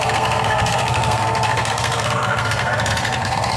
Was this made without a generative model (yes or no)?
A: no